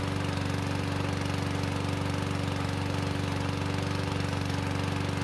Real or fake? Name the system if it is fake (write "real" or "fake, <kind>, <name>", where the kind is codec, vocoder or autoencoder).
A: real